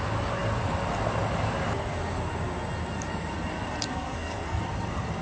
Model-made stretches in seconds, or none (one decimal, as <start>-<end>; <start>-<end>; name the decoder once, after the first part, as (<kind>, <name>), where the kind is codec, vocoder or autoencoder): 3.9-4.6 (codec, SNAC)